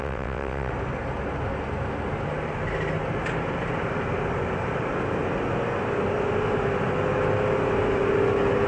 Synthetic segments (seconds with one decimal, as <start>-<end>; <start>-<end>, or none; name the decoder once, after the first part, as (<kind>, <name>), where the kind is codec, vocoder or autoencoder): 0.0-0.7 (vocoder, WaveNeXt)